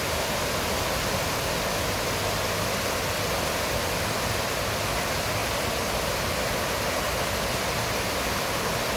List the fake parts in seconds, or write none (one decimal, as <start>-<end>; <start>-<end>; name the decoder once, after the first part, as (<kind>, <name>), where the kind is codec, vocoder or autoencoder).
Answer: none